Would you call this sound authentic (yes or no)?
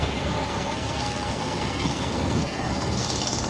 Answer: no